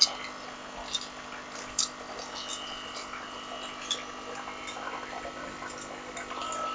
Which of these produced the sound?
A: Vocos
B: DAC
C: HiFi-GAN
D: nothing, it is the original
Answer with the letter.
D